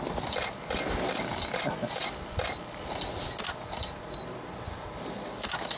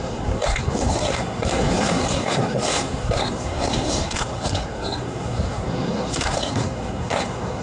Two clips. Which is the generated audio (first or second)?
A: second